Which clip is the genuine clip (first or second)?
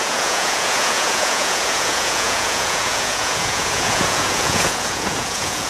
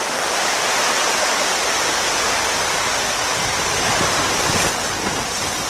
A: second